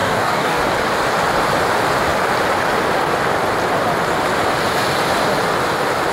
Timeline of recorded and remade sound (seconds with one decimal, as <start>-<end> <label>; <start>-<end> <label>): 0.0-0.6 remade; 0.6-6.1 recorded

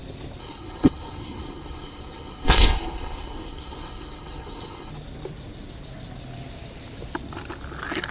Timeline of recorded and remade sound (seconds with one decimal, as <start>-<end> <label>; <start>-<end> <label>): 0.0-0.4 recorded; 0.4-4.9 remade; 4.9-8.1 recorded

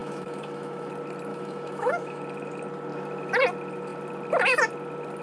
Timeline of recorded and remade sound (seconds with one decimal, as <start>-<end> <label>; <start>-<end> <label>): 0.0-0.9 remade; 0.9-1.3 recorded; 1.3-2.2 remade; 2.2-5.2 recorded

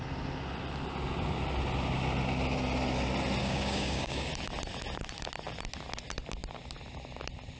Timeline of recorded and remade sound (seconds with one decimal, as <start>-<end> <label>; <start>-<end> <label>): 0.0-3.4 recorded; 3.4-4.3 remade; 4.3-7.6 recorded

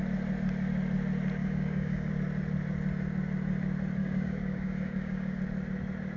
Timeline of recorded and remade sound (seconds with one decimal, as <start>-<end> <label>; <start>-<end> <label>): 0.0-1.4 recorded; 1.4-2.1 remade; 2.1-4.0 recorded; 4.0-5.4 remade; 5.4-6.2 recorded